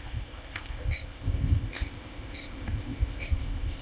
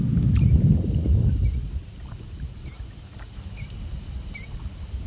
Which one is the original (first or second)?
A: second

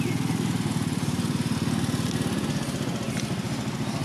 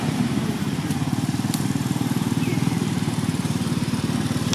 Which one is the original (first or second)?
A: first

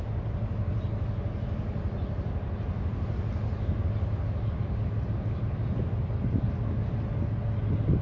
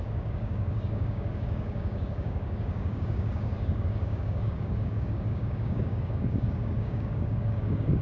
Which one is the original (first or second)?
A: first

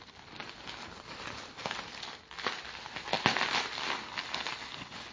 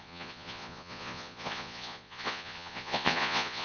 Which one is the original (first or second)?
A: first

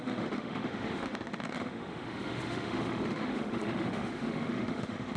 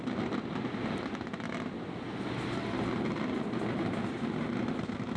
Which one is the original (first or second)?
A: second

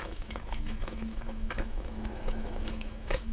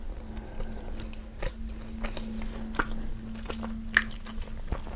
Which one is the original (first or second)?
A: second